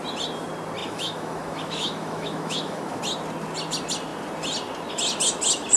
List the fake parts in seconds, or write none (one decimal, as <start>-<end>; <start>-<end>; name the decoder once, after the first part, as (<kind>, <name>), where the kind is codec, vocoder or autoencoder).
0.8-3.0 (autoencoder, DAC-VAE)